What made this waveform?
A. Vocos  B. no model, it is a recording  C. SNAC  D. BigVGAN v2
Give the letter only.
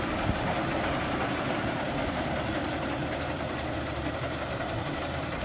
D